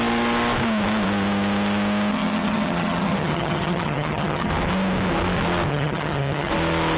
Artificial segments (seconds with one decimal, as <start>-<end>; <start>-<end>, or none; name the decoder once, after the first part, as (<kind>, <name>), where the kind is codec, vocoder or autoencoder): 2.1-4.5 (vocoder, HiFi-GAN); 5.7-6.5